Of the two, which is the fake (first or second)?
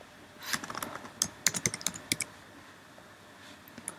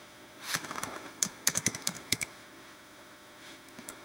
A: second